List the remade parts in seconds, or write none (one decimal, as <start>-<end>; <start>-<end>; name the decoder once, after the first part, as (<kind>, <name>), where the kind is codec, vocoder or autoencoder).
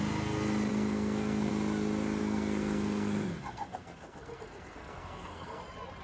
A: 0.7-1.5 (codec, SNAC); 2.2-5.6